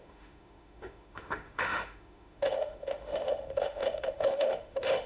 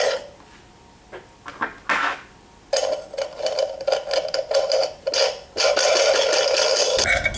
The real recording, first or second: second